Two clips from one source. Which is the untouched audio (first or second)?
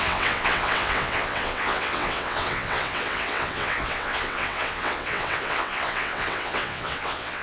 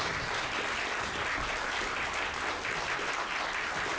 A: second